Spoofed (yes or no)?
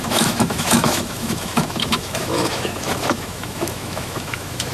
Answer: yes